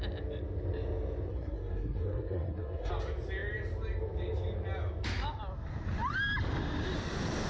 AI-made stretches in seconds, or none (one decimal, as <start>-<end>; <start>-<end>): 1.3-2.9